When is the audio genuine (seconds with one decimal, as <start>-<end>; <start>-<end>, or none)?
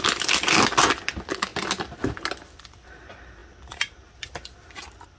0.0-5.2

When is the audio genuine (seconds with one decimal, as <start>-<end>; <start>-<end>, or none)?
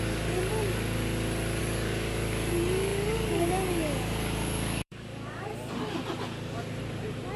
0.5-1.6; 5.5-7.4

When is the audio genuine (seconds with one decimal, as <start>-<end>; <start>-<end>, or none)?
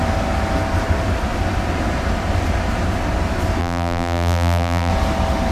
0.0-3.6; 4.9-5.5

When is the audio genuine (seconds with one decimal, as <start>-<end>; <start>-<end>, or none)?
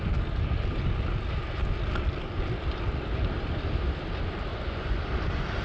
0.0-4.5; 5.0-5.6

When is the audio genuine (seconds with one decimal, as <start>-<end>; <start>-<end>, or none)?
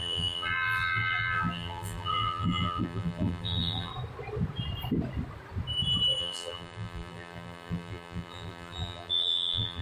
3.9-6.2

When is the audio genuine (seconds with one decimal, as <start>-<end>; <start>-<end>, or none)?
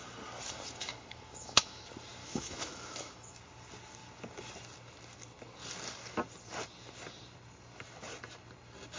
0.0-0.8; 1.8-2.2; 3.4-9.0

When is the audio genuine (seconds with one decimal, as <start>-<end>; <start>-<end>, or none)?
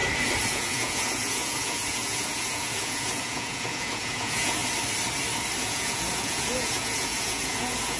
0.0-0.5; 4.6-5.6